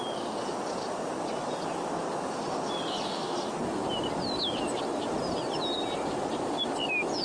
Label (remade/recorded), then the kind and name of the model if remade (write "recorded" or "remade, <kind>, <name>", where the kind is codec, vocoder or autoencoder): recorded